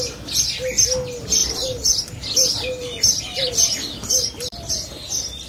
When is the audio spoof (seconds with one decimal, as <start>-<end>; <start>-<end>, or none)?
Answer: 1.4-4.7